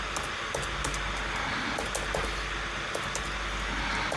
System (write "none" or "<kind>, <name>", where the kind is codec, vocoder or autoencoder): none